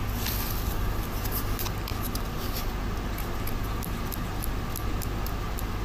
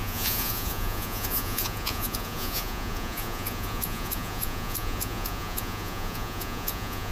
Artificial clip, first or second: second